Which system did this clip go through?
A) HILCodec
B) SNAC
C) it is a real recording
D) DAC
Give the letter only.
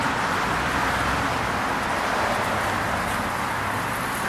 C